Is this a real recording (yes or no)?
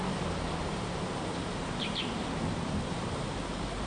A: no